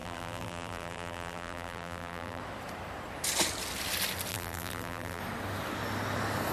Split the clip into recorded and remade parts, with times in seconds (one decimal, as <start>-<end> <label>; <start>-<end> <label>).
0.0-2.4 remade; 2.4-4.3 recorded; 4.3-5.2 remade; 5.2-6.5 recorded